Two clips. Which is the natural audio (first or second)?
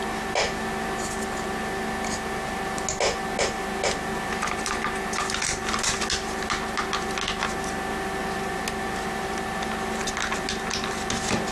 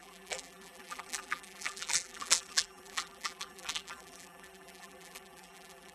first